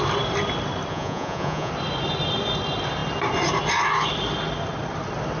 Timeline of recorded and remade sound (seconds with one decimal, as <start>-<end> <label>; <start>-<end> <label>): 0.0-0.9 recorded; 0.9-1.7 remade; 1.7-5.4 recorded